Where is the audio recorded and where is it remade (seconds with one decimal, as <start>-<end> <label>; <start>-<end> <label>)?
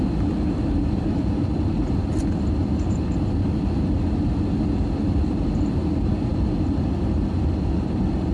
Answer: 0.0-8.3 recorded